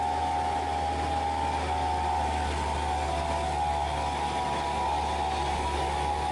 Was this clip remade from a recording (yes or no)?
no